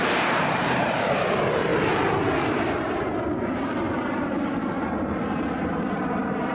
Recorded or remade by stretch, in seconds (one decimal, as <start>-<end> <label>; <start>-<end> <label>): 0.0-1.7 remade; 1.7-2.2 recorded; 2.2-6.5 remade